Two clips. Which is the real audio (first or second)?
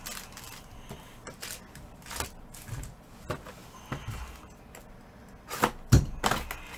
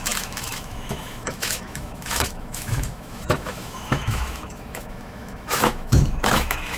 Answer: first